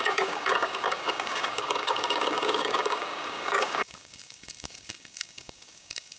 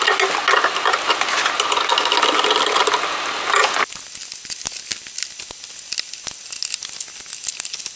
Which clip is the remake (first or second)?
first